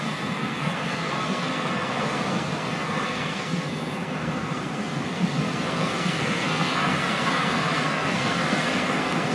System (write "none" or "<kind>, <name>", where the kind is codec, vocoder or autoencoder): codec, SNAC